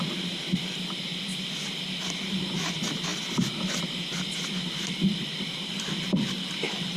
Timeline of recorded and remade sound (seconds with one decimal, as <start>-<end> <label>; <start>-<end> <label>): 0.0-1.3 remade; 1.3-2.3 recorded; 2.3-3.1 remade; 3.1-3.8 recorded; 3.8-7.0 remade